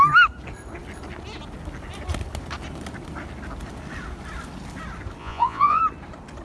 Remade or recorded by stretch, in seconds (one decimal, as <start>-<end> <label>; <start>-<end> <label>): 0.0-5.2 recorded; 5.2-5.8 remade; 5.8-6.4 recorded